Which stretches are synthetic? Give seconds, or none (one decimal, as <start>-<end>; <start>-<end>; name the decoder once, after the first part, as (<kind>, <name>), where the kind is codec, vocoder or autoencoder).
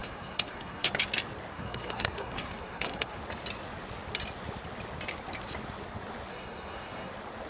0.0-0.9 (codec, SNAC); 1.5-3.2; 6.3-7.1